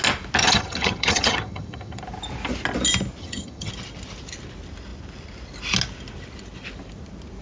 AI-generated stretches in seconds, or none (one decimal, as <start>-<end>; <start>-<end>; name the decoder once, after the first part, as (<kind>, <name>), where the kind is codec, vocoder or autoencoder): 0.4-2.0 (vocoder, HiFi-GAN); 3.2-3.7